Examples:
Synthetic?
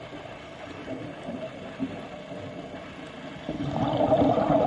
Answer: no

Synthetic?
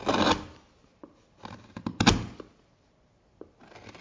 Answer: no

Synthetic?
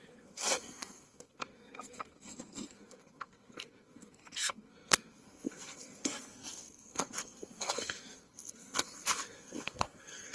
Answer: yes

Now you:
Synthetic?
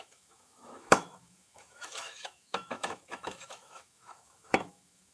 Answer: yes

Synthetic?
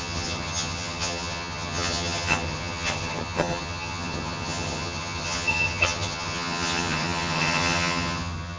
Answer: yes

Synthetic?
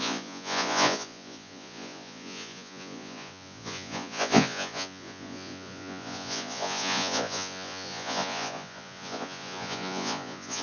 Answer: yes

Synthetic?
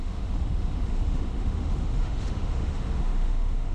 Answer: yes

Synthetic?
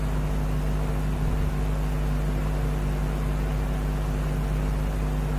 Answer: no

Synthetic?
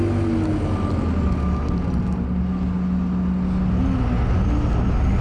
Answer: no